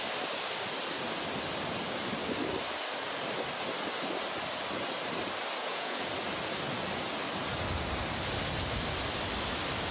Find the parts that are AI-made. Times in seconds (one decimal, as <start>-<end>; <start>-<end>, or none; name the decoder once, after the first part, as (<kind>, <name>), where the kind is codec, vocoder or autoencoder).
5.6-6.1 (vocoder, Vocos)